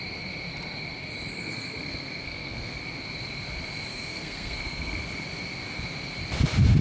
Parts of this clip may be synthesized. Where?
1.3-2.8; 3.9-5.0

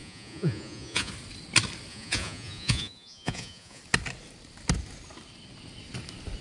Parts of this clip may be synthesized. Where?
0.0-1.1; 1.9-3.8